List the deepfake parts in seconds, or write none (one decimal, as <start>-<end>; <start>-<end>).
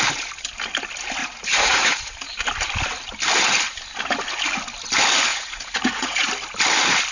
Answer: 1.2-2.1; 5.3-6.3